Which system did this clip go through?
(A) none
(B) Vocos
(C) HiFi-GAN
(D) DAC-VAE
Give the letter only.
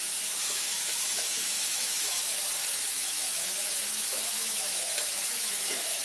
D